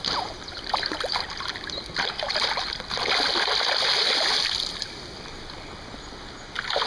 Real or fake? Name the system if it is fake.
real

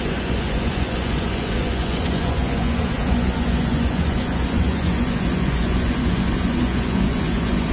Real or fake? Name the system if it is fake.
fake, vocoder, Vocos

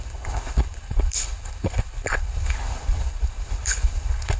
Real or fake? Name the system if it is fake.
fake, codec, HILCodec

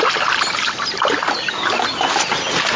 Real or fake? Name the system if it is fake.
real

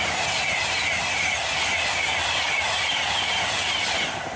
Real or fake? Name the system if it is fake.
real